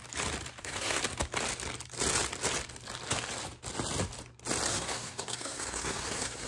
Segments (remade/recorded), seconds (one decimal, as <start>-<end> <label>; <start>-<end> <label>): 0.0-0.6 recorded; 0.6-1.0 remade; 1.0-4.7 recorded; 4.7-6.5 remade